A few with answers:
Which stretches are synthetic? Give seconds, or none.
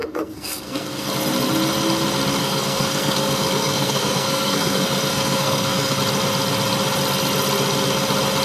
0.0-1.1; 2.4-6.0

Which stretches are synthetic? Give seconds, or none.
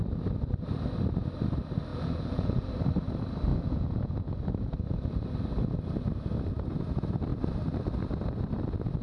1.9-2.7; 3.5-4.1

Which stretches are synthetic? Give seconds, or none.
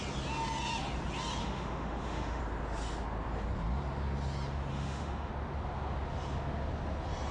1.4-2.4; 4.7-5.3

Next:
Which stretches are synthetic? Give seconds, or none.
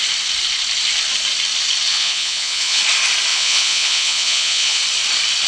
1.9-2.8; 3.3-4.8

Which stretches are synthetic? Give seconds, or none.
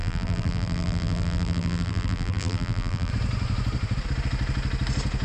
0.0-3.1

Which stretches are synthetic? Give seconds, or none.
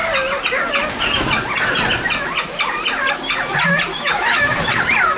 3.9-4.7